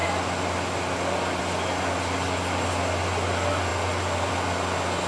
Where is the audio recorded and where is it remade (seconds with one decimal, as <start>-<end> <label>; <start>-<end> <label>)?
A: 0.0-5.1 recorded